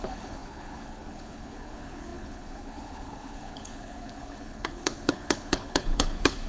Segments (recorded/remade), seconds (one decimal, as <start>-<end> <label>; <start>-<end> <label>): 0.0-6.5 remade

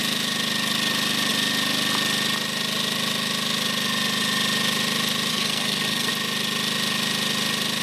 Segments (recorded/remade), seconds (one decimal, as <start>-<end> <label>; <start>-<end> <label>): 0.0-5.3 recorded; 5.3-6.1 remade; 6.1-7.8 recorded

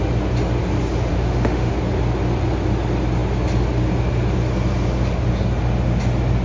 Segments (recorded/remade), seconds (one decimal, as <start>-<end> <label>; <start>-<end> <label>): 0.0-1.1 recorded; 1.1-1.7 remade; 1.7-6.4 recorded

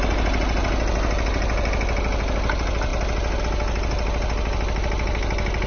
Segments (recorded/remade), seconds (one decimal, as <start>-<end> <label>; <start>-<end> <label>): 0.0-5.7 recorded

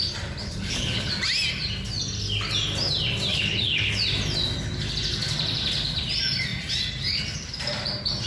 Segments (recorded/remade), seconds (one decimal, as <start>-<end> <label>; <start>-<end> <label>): 0.0-0.4 recorded; 0.4-1.1 remade; 1.1-3.3 recorded; 3.3-3.9 remade; 3.9-8.3 recorded

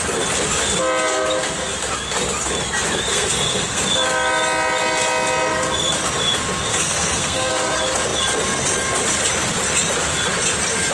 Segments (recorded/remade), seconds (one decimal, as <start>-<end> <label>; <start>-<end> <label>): 0.0-3.1 recorded; 3.1-3.8 remade; 3.8-6.7 recorded; 6.7-7.5 remade; 7.5-10.9 recorded